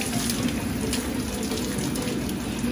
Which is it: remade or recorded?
recorded